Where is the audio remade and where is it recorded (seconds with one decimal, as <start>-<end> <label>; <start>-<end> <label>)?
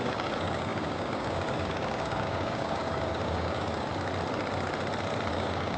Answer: 0.0-3.9 remade; 3.9-5.3 recorded; 5.3-5.8 remade